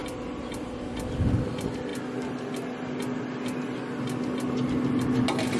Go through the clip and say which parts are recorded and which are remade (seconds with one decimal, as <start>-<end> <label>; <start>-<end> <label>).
0.0-5.6 recorded